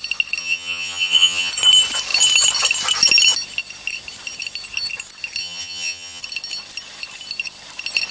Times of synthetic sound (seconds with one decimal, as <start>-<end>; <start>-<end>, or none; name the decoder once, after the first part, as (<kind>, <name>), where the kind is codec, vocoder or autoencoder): 0.4-1.5 (vocoder, HiFi-GAN); 5.4-6.2